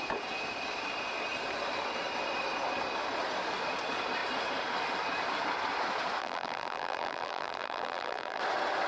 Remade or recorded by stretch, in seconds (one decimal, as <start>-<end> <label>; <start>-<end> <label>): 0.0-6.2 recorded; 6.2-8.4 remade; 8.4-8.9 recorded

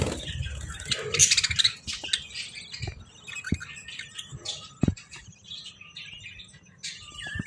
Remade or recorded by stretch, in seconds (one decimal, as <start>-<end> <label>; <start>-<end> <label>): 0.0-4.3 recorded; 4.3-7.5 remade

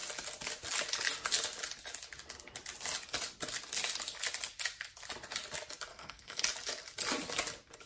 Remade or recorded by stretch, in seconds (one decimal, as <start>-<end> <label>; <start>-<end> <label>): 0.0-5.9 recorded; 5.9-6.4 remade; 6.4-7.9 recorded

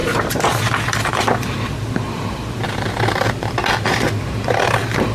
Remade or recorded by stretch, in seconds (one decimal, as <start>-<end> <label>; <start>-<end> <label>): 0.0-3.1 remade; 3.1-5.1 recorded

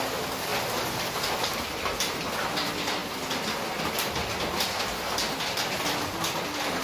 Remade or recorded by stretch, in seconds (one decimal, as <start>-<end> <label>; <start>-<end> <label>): 0.0-0.5 recorded; 0.5-1.5 remade; 1.5-6.8 recorded

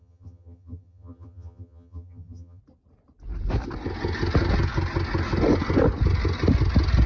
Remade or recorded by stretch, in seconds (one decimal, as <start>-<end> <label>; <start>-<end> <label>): 0.0-2.6 remade; 2.6-7.1 recorded